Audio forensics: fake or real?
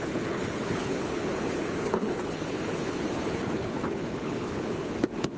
fake